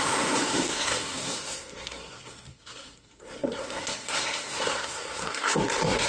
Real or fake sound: fake